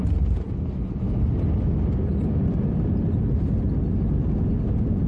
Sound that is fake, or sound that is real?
real